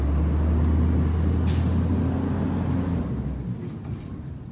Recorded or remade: recorded